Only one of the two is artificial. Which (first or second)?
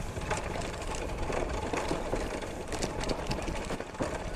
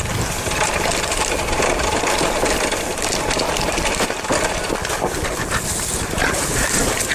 first